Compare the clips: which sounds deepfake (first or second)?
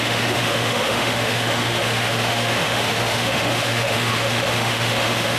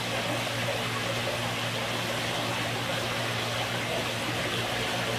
first